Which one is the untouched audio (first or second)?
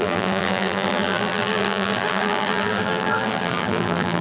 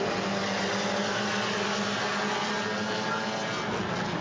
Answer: second